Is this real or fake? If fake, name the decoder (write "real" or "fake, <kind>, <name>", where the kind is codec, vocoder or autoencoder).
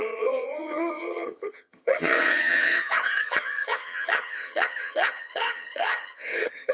fake, vocoder, HiFi-GAN